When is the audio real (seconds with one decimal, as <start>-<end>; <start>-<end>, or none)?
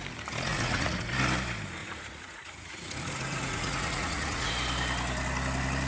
0.0-0.5; 1.1-1.8; 4.5-5.9